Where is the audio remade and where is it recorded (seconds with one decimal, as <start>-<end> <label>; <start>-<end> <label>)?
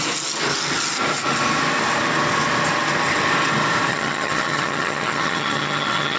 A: 0.0-3.9 recorded; 3.9-6.2 remade